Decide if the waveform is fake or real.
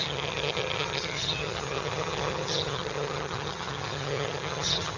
fake